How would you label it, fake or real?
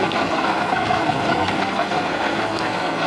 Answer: fake